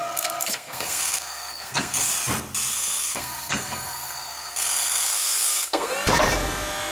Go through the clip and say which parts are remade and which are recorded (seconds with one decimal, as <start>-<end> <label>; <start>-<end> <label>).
0.0-2.1 remade; 2.1-2.7 recorded; 2.7-5.9 remade; 5.9-6.9 recorded